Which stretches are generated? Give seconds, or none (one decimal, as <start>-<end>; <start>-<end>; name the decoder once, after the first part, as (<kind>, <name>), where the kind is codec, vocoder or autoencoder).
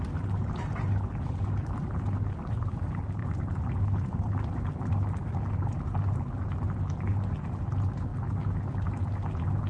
1.6-2.6 (vocoder, BigVGAN v2); 3.2-4.9